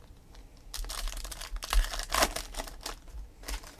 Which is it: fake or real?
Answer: real